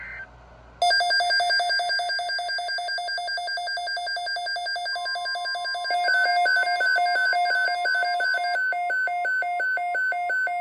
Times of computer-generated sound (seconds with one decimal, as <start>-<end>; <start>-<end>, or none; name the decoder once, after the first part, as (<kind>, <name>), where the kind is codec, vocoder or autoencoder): none